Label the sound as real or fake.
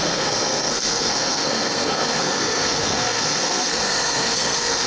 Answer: fake